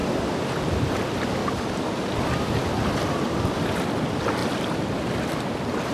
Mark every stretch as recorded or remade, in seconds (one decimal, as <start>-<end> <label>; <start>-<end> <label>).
0.0-1.4 remade; 1.4-2.6 recorded; 2.6-4.4 remade; 4.4-4.9 recorded; 4.9-5.9 remade